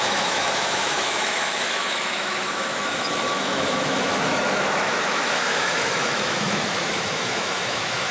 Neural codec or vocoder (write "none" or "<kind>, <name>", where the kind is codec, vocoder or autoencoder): autoencoder, DAC-VAE